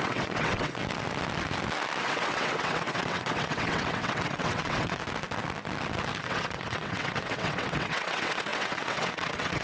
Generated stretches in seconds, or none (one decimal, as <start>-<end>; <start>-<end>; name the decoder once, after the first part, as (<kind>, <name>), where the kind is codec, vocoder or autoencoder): 0.0-0.8 (vocoder, WaveNeXt); 2.0-5.0; 6.2-9.6